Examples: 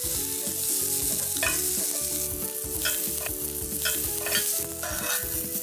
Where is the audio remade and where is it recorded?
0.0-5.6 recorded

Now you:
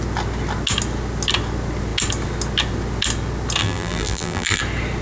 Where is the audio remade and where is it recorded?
0.0-3.6 recorded; 3.6-4.6 remade; 4.6-5.0 recorded

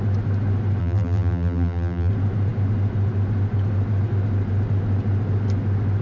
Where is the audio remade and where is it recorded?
0.0-0.8 recorded; 0.8-2.1 remade; 2.1-6.0 recorded

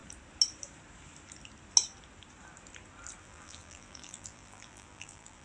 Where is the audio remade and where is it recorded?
0.0-3.2 recorded; 3.2-5.4 remade

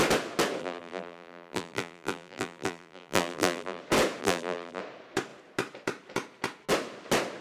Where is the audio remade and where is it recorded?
0.0-0.6 recorded; 0.6-3.8 remade; 3.8-4.2 recorded; 4.2-4.8 remade; 4.8-7.4 recorded

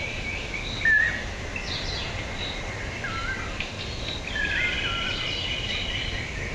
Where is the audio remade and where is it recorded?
0.0-6.5 recorded

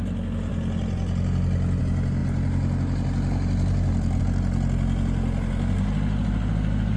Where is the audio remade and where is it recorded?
0.0-7.0 recorded

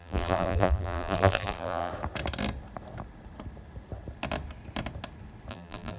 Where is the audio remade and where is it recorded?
0.0-1.9 remade; 1.9-5.5 recorded; 5.5-6.0 remade